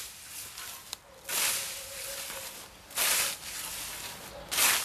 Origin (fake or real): real